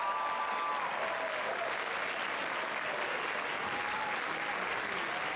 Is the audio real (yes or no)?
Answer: yes